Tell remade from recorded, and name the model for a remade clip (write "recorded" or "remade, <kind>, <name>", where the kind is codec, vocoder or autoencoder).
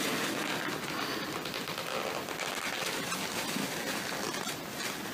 recorded